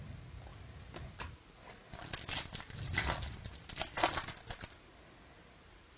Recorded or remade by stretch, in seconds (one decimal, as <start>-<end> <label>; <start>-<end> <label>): 0.0-6.0 recorded